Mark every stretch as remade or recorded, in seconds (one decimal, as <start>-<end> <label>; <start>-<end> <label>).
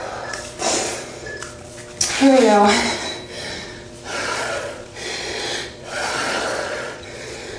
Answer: 0.0-1.8 remade; 1.8-3.5 recorded; 3.5-7.6 remade